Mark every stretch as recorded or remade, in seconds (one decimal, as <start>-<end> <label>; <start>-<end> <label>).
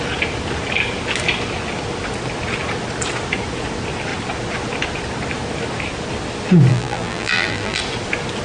0.0-6.7 recorded; 6.7-7.8 remade; 7.8-8.4 recorded